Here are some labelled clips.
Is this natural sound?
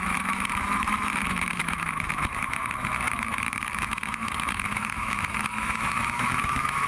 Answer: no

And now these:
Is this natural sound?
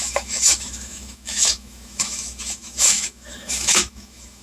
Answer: no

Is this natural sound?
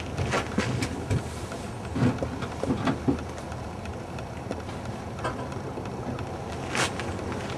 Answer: yes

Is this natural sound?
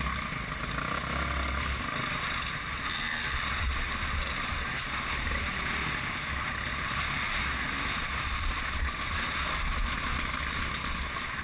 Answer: yes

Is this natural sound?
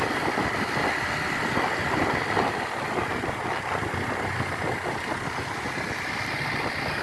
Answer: yes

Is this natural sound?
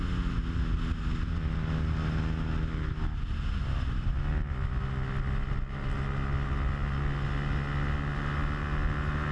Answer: yes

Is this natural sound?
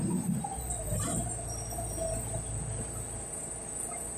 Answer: yes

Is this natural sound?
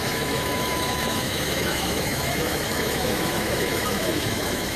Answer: no